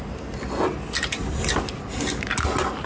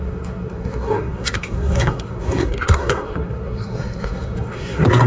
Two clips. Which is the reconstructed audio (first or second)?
second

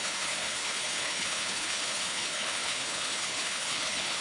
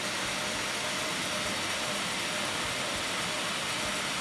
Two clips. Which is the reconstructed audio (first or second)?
first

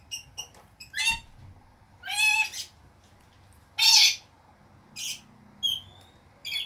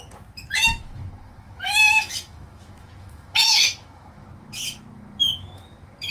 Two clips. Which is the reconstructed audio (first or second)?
second